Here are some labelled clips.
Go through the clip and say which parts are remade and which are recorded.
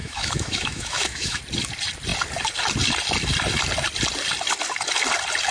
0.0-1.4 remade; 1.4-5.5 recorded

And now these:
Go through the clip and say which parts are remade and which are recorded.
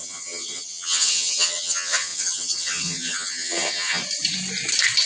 0.0-4.0 remade; 4.0-5.1 recorded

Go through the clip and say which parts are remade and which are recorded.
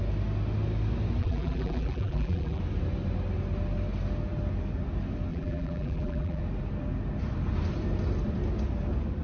0.0-1.2 recorded; 1.2-2.6 remade; 2.6-5.3 recorded; 5.3-6.4 remade; 6.4-9.2 recorded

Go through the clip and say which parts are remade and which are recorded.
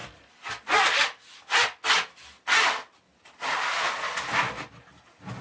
0.0-5.4 recorded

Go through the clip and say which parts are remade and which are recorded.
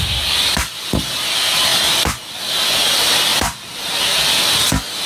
0.0-3.3 recorded; 3.3-4.0 remade; 4.0-5.1 recorded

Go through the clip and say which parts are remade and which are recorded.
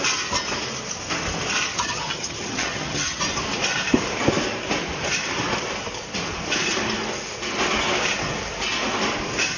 0.0-1.7 recorded; 1.7-3.2 remade; 3.2-9.6 recorded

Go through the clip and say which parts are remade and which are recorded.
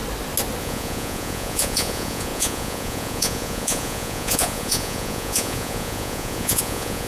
0.0-0.6 recorded; 0.6-7.1 remade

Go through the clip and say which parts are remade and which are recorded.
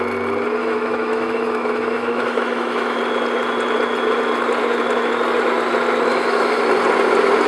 0.0-0.6 recorded; 0.6-3.0 remade; 3.0-6.1 recorded; 6.1-6.6 remade; 6.6-7.5 recorded